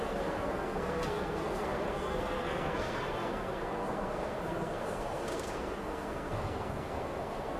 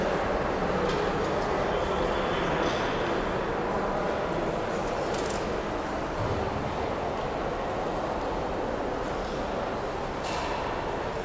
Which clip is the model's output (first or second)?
first